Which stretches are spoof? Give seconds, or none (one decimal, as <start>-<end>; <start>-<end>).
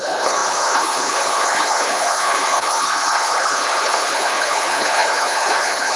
0.0-6.0